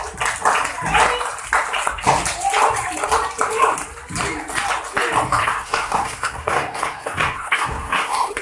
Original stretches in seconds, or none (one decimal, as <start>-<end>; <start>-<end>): 0.0-5.4